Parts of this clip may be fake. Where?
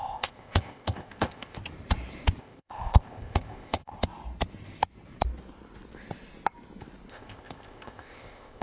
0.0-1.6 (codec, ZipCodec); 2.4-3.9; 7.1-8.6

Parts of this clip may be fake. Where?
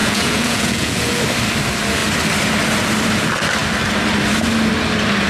0.0-1.2 (vocoder, Vocos)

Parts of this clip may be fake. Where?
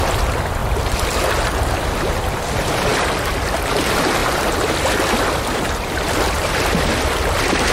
4.2-6.9 (vocoder, BigVGAN v2)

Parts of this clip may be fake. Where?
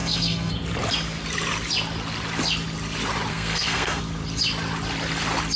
0.0-0.5 (codec, SNAC); 3.3-4.0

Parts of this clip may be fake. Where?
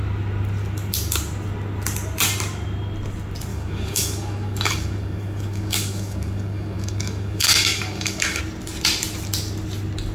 3.5-8.4 (codec, DAC)